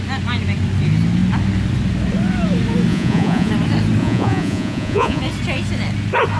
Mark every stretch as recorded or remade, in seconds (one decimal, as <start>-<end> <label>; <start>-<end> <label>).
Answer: 0.0-2.9 recorded; 2.9-3.5 remade; 3.5-4.0 recorded; 4.0-5.2 remade; 5.2-6.4 recorded